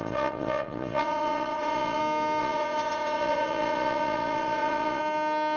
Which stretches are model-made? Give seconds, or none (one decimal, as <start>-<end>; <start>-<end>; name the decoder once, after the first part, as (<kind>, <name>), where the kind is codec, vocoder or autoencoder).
0.0-2.0 (vocoder, Vocos); 2.4-5.0